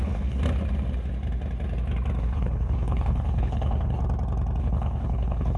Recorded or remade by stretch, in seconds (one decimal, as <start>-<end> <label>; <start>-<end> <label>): 0.0-0.4 remade; 0.4-2.2 recorded; 2.2-4.0 remade; 4.0-4.6 recorded; 4.6-5.6 remade